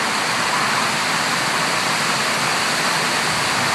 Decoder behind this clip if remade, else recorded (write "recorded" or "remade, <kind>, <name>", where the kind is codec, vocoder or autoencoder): recorded